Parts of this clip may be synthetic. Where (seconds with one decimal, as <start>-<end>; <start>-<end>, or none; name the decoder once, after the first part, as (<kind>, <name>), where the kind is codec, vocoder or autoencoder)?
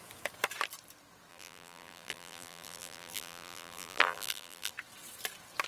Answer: 1.3-4.7 (vocoder, BigVGAN v2)